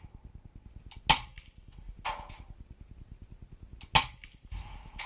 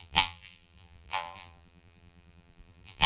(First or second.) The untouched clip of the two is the first